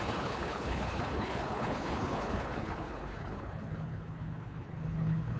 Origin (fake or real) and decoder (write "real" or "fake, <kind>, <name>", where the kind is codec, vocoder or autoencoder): fake, codec, HILCodec